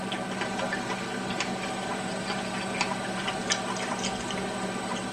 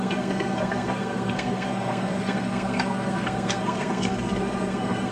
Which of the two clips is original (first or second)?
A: first